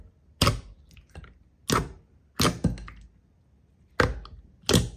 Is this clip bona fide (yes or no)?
yes